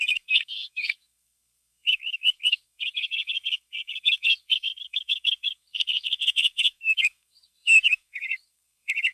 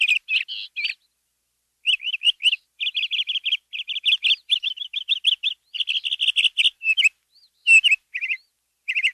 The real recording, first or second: second